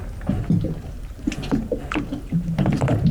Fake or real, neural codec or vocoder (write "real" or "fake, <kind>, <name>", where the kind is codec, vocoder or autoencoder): real